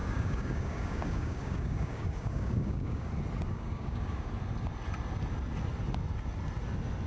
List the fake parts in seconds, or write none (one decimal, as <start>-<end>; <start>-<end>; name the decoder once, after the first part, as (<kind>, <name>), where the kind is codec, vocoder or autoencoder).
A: 0.0-3.1 (codec, DAC); 3.5-4.3